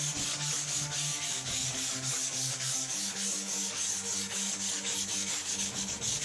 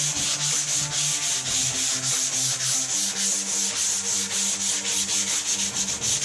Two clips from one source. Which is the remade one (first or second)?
first